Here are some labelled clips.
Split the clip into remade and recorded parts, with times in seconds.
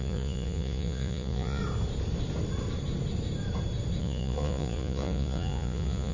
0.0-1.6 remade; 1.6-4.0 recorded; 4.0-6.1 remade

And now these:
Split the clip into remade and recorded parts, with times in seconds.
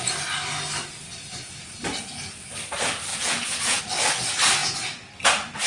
0.0-3.1 recorded; 3.1-3.8 remade; 3.8-4.6 recorded; 4.6-5.1 remade; 5.1-5.7 recorded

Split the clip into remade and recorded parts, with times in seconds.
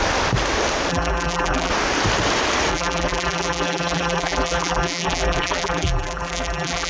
0.0-0.9 recorded; 0.9-1.7 remade; 1.7-2.7 recorded; 2.7-6.9 remade